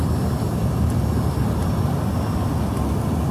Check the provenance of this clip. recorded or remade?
recorded